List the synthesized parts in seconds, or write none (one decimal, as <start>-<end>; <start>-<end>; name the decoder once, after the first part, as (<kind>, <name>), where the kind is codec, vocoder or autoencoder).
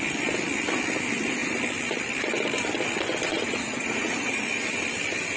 3.3-4.4 (vocoder, Vocos)